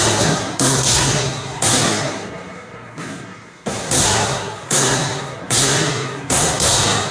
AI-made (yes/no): yes